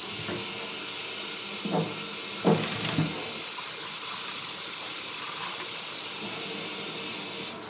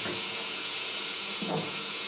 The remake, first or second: second